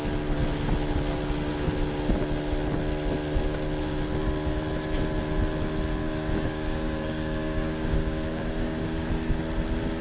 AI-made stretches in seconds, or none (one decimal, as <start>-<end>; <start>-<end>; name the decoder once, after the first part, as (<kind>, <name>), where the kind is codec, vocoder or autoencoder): 6.0-9.1 (codec, DAC)